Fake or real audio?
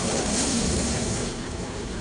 fake